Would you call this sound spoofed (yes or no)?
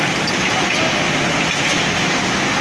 no